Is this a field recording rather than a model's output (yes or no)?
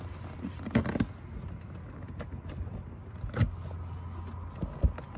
yes